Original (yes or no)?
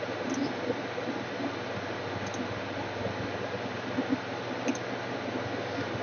yes